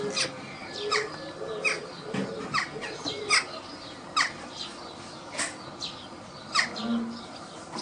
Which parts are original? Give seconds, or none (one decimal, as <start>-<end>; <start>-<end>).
0.0-7.8